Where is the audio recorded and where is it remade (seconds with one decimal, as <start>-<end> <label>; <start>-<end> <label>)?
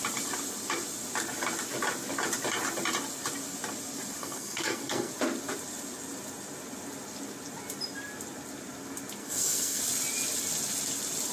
0.0-4.2 recorded; 4.2-5.1 remade; 5.1-9.2 recorded; 9.2-9.8 remade; 9.8-11.3 recorded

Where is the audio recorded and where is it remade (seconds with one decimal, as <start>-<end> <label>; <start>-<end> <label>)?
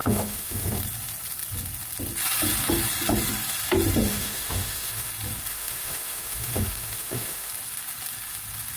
0.0-0.8 remade; 0.8-4.1 recorded; 4.1-5.1 remade; 5.1-5.5 recorded; 5.5-7.5 remade; 7.5-8.8 recorded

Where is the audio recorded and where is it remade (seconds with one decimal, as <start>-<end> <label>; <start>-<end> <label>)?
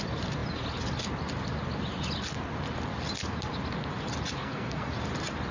0.0-4.4 recorded; 4.4-4.9 remade; 4.9-5.5 recorded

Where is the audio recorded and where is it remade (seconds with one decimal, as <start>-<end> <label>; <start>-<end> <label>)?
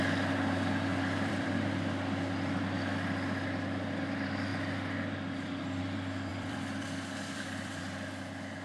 0.0-0.9 recorded; 0.9-1.5 remade; 1.5-6.3 recorded; 6.3-7.8 remade; 7.8-8.6 recorded